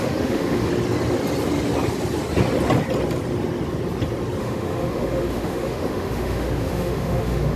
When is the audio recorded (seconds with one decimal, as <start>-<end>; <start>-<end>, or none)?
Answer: 0.7-4.4